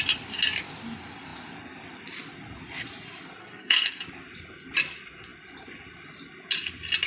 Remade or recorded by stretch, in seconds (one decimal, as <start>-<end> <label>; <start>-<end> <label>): 0.0-3.4 recorded; 3.4-4.0 remade; 4.0-7.1 recorded